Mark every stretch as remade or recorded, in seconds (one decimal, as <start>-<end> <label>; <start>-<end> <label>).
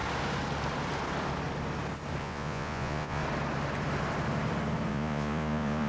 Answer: 0.0-2.2 recorded; 2.2-3.2 remade; 3.2-4.9 recorded; 4.9-5.9 remade